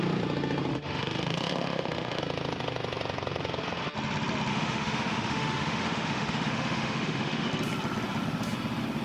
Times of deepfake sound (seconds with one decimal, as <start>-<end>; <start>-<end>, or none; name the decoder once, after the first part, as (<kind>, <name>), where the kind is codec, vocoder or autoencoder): 0.7-2.2 (autoencoder, DAC-VAE); 4.5-7.5